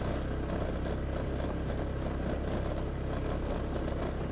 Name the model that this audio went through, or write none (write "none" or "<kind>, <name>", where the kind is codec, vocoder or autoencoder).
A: none